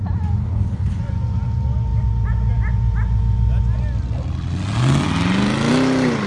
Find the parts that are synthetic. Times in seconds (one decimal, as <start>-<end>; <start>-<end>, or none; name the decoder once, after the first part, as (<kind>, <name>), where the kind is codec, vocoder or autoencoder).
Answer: 0.4-1.0 (codec, HILCodec)